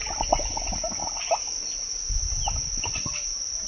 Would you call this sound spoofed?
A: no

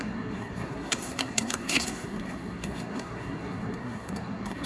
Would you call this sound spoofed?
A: yes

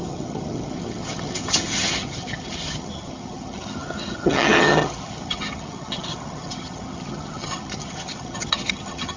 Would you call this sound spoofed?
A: yes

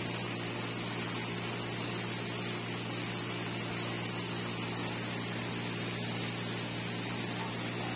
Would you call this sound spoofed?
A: no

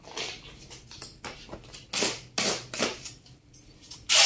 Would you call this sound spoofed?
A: no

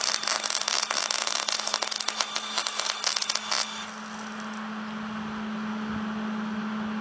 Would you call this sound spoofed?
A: no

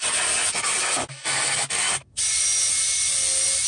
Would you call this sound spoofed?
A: no